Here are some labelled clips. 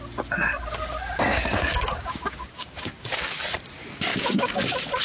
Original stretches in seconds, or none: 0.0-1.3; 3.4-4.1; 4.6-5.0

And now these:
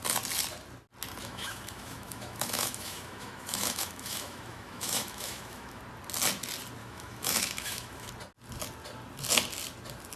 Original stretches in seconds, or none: 0.0-1.2; 5.8-6.8; 8.1-10.2

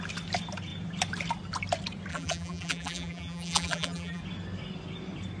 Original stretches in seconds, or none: 0.0-2.1; 4.2-5.4

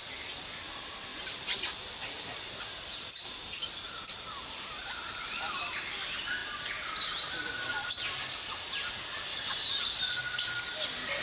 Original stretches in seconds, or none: 0.0-1.1; 5.9-9.3; 9.8-11.2

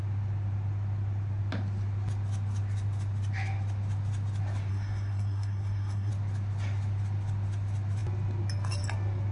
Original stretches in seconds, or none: 0.0-4.7; 6.1-9.3